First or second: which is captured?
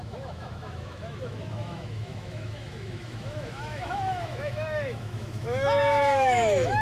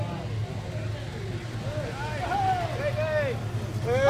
second